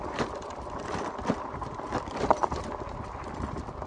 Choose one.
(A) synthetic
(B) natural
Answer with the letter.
B